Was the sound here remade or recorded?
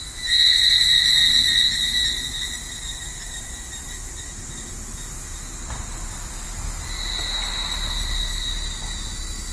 recorded